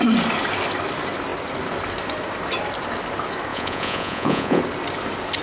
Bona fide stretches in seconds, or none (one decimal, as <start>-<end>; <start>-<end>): 0.0-3.5; 4.6-5.4